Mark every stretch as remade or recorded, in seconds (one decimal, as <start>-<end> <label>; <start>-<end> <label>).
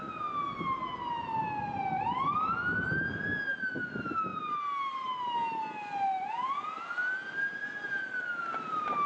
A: 0.0-9.1 recorded